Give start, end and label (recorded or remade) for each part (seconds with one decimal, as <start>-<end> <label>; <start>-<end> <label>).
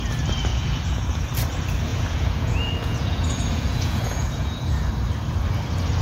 0.0-0.5 recorded; 0.5-1.3 remade; 1.3-1.9 recorded; 1.9-4.9 remade; 4.9-6.0 recorded